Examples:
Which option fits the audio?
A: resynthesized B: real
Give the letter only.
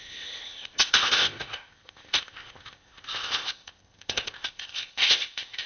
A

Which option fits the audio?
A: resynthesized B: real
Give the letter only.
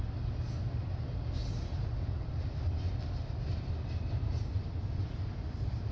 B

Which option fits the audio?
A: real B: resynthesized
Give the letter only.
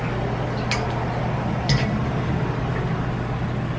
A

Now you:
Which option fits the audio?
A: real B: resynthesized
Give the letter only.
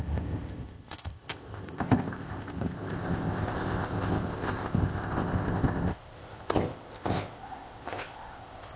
B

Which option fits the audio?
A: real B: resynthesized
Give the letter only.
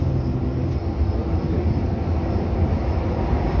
A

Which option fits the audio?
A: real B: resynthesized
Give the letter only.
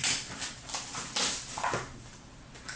A